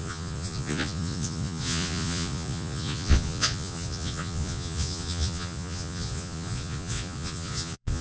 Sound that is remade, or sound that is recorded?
remade